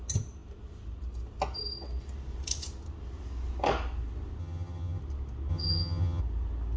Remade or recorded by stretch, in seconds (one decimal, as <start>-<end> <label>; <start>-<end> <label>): 0.0-4.4 recorded; 4.4-5.0 remade; 5.0-5.5 recorded; 5.5-6.2 remade; 6.2-6.8 recorded